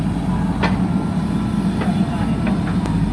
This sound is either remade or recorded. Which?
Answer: recorded